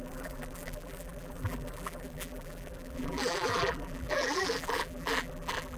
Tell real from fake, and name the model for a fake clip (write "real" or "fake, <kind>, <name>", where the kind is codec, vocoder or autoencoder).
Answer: fake, vocoder, BigVGAN v2